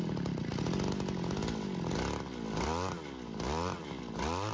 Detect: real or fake real